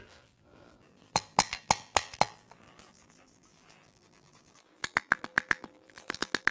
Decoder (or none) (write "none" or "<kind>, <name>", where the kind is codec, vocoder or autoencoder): vocoder, BigVGAN v2